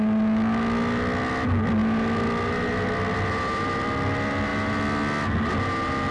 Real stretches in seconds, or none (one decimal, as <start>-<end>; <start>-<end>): 0.0-6.1

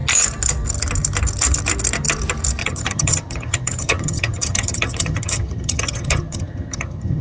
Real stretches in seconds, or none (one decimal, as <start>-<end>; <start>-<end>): 0.0-2.6